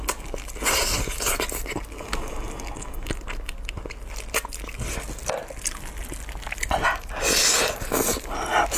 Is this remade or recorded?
recorded